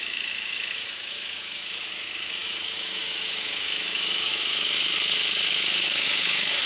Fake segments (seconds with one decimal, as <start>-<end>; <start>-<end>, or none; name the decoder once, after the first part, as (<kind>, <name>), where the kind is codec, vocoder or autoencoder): 0.0-6.7 (autoencoder, DAC-VAE)